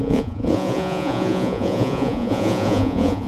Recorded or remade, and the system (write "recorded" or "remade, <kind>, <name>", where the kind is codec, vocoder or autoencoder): remade, vocoder, Vocos